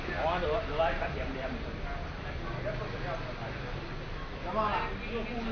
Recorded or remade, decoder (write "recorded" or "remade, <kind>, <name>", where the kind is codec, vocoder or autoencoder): recorded